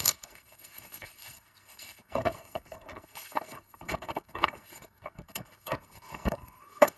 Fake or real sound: fake